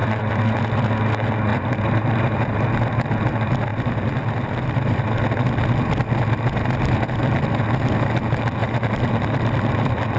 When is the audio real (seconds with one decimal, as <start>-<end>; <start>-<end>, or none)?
0.6-1.5; 3.1-3.7; 5.0-8.6